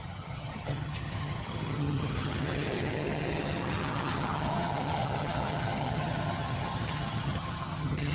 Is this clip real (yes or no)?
no